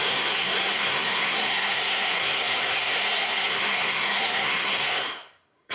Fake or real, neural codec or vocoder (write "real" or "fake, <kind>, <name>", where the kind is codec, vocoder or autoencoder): fake, codec, SNAC